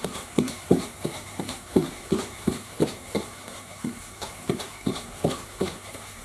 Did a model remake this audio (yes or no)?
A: yes